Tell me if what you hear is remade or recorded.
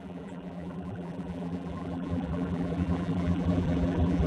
remade